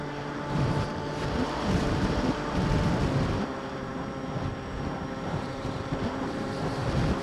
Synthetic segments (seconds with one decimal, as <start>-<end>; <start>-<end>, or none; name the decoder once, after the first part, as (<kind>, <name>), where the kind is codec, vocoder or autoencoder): 0.0-7.2 (vocoder, BigVGAN v2)